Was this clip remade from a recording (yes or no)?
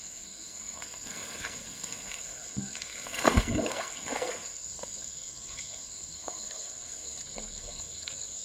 yes